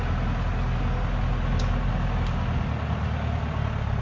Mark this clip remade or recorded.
recorded